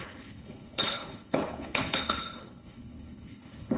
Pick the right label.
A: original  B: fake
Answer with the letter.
B